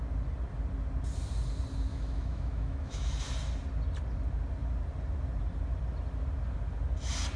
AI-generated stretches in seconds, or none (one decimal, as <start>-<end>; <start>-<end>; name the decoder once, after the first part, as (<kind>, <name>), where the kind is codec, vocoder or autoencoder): 1.9-3.1 (autoencoder, DAC-VAE)

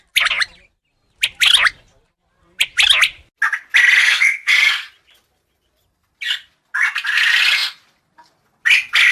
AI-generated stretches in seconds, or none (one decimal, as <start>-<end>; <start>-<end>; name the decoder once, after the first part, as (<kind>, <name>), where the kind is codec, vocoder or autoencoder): 4.0-4.5 (codec, SNAC)